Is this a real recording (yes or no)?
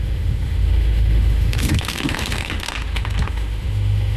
no